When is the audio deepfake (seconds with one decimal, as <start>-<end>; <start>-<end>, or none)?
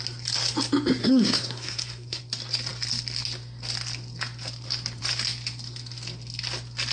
1.0-2.2